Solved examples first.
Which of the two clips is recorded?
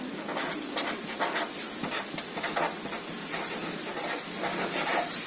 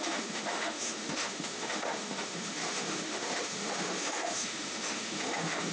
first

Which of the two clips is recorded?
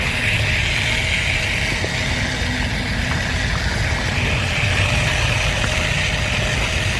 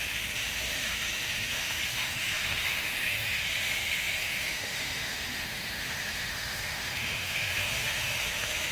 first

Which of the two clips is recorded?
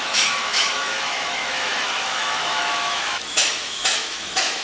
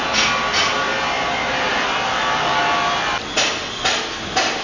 second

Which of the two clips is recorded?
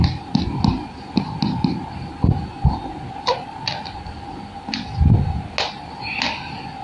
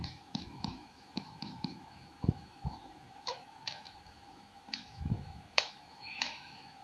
first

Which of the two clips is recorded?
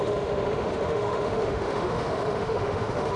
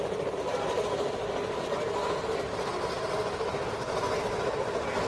second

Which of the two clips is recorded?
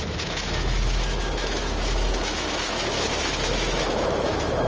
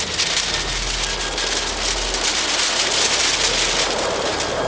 second